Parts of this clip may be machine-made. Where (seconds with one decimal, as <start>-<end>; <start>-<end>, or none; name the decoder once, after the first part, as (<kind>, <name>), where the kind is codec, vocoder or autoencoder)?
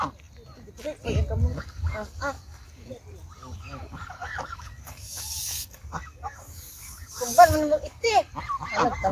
1.5-2.9 (codec, DAC); 3.4-8.3